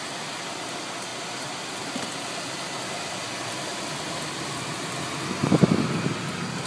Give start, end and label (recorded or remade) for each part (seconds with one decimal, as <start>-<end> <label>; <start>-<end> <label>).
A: 0.0-1.1 recorded; 1.1-5.1 remade; 5.1-6.7 recorded